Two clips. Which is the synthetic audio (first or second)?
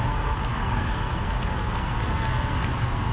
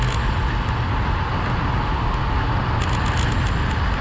first